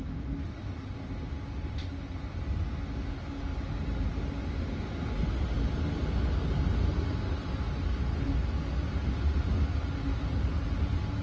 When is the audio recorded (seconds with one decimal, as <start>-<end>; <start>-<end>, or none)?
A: 0.0-11.2